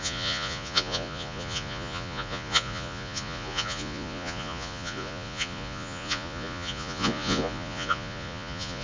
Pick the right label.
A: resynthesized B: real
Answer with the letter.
A